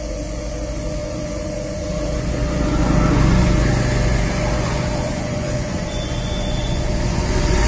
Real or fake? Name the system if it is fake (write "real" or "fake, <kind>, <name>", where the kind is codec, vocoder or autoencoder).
fake, vocoder, Vocos